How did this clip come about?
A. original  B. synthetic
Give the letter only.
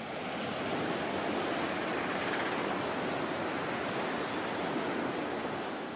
A